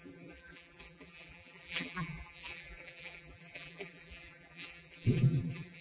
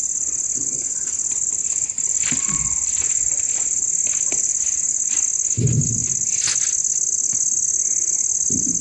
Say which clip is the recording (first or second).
second